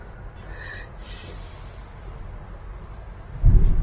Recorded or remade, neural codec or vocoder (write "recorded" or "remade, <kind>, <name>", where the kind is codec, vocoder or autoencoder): recorded